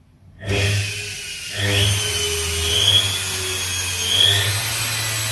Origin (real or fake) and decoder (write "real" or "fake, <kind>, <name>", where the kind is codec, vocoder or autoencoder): real